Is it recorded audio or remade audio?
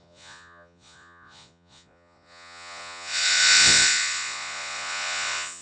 remade